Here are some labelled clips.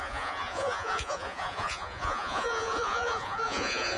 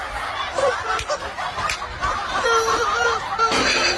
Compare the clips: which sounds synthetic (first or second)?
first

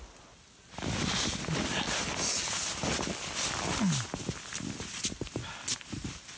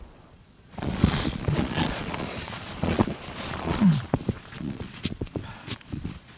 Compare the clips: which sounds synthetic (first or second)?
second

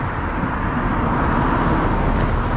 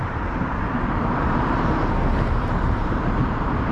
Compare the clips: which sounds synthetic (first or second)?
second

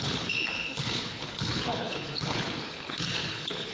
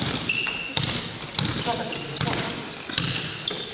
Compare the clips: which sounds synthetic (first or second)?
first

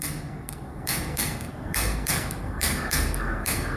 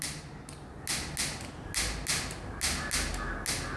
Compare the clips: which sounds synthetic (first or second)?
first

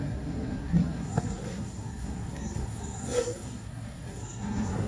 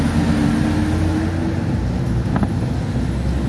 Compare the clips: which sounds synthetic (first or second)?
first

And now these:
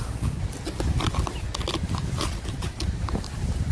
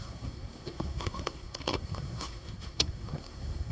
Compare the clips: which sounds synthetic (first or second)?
second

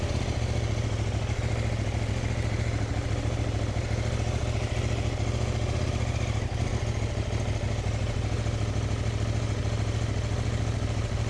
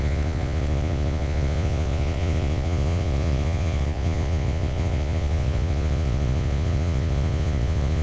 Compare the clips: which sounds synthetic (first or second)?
second